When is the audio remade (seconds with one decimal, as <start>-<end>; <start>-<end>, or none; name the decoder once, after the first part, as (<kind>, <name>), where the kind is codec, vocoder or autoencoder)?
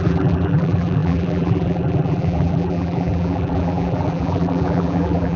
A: 0.0-5.4 (vocoder, BigVGAN v2)